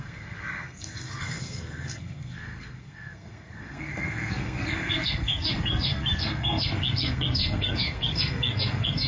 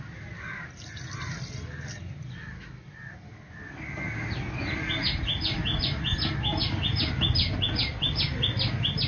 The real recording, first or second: second